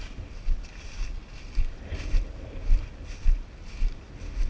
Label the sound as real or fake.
real